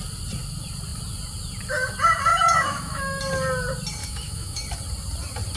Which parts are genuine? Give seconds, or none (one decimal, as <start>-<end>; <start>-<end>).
0.0-2.3; 3.2-4.0; 4.6-5.6